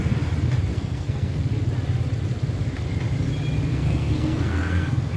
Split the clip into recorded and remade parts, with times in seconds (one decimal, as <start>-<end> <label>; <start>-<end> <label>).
0.0-0.7 recorded; 0.7-1.4 remade; 1.4-3.7 recorded; 3.7-5.2 remade